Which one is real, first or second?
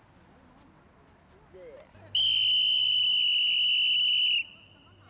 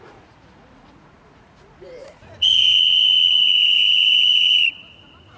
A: first